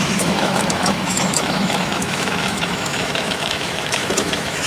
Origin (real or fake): fake